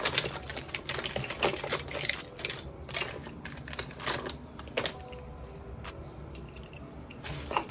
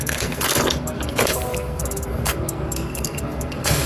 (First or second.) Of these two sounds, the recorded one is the first